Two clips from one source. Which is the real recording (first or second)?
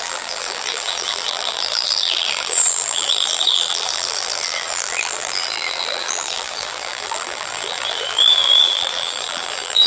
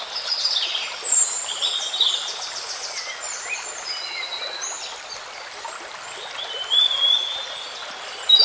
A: second